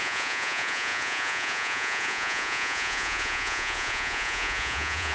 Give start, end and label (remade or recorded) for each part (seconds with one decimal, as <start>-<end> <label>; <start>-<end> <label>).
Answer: 0.0-5.1 remade